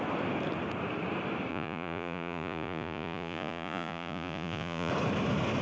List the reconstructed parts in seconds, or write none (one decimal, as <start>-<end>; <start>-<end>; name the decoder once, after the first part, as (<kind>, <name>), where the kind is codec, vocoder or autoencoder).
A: 1.5-4.9 (vocoder, Vocos)